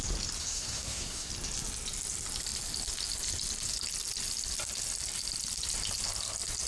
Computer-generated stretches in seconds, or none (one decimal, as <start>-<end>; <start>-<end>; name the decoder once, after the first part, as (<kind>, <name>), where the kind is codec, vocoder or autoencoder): 0.4-1.3 (codec, SNAC)